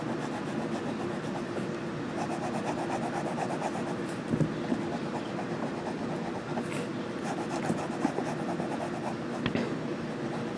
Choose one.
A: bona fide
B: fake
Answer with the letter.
A